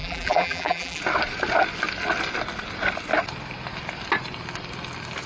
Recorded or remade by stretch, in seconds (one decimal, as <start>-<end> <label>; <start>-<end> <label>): 0.0-1.0 remade; 1.0-5.3 recorded

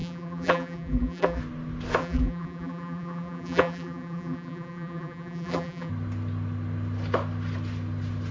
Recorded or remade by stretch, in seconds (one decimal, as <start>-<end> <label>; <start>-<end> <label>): 0.0-1.4 remade; 1.4-2.0 recorded; 2.0-5.9 remade; 5.9-8.3 recorded

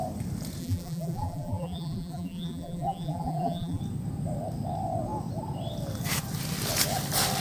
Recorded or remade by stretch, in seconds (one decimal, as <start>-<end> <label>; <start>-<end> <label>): 0.0-0.6 recorded; 0.6-3.8 remade; 3.8-7.4 recorded

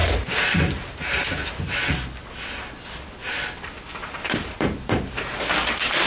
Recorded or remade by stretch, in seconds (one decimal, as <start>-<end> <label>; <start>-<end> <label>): 0.0-1.5 remade; 1.5-4.0 recorded; 4.0-5.5 remade; 5.5-6.1 recorded

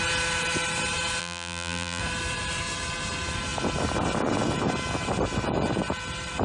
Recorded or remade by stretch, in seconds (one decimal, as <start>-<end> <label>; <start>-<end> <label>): 0.0-1.2 recorded; 1.2-2.0 remade; 2.0-6.4 recorded

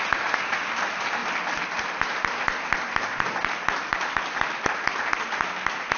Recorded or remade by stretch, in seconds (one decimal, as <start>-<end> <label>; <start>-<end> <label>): 0.0-1.2 recorded; 1.2-4.8 remade; 4.8-6.0 recorded